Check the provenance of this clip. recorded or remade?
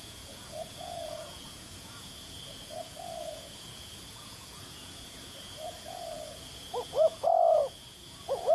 remade